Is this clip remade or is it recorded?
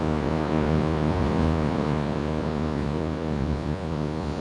remade